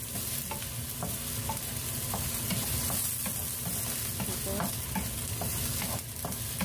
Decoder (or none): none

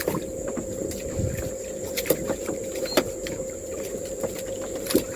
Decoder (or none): vocoder, BigVGAN v2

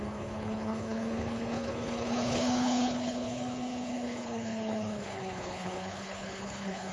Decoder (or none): codec, HILCodec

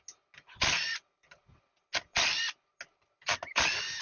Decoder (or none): none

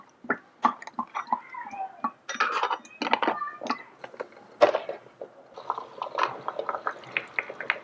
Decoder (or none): none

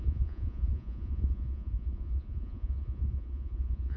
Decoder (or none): vocoder, Vocos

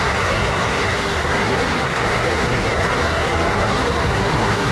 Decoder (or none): codec, SNAC